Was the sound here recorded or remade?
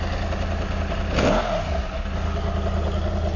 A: recorded